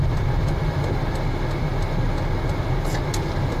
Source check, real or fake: real